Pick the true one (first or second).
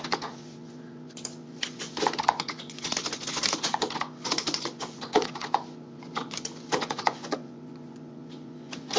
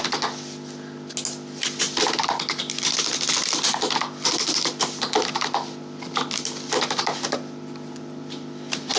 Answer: second